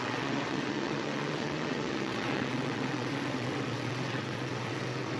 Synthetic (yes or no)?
yes